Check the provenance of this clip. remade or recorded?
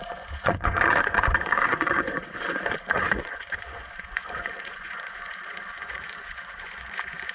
remade